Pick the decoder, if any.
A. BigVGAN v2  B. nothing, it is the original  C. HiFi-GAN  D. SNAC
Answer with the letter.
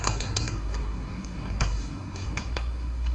D